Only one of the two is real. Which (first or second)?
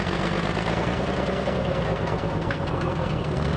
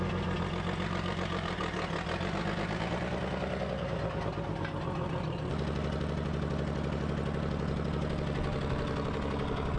second